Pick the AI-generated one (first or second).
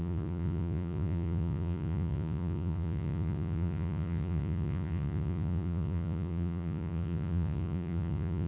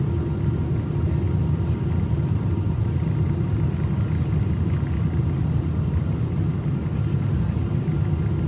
first